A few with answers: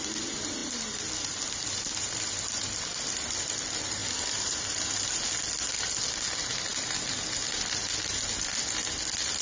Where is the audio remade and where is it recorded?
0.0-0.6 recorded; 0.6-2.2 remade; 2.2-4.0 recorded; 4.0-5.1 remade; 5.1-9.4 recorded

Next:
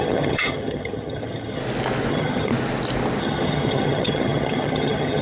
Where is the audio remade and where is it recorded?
0.0-1.6 remade; 1.6-2.1 recorded; 2.1-2.5 remade; 2.5-3.2 recorded; 3.2-5.2 remade

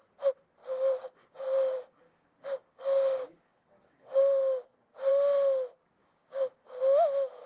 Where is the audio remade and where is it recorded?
0.0-0.6 recorded; 0.6-5.1 remade; 5.1-6.0 recorded; 6.0-6.8 remade; 6.8-7.5 recorded

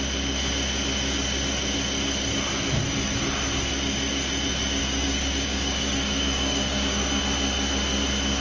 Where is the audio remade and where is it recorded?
0.0-4.8 recorded; 4.8-7.2 remade; 7.2-8.4 recorded

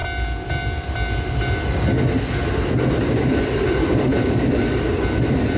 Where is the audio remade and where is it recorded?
0.0-5.6 recorded

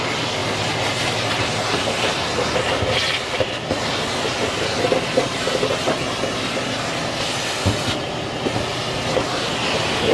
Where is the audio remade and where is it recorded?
0.0-3.0 recorded; 3.0-3.9 remade; 3.9-10.1 recorded

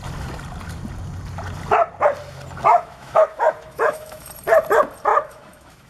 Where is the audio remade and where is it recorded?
0.0-2.7 recorded; 2.7-4.3 remade; 4.3-5.1 recorded; 5.1-5.9 remade

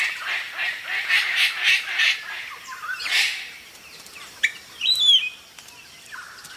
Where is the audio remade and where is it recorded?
0.0-1.3 recorded; 1.3-5.2 remade; 5.2-6.6 recorded